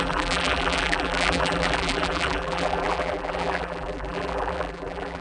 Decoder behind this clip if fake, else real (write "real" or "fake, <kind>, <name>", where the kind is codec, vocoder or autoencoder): fake, vocoder, BigVGAN v2